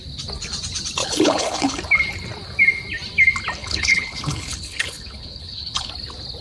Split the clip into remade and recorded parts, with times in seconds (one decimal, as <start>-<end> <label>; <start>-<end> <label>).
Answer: 0.0-1.0 recorded; 1.0-1.8 remade; 1.8-3.6 recorded; 3.6-5.9 remade; 5.9-6.4 recorded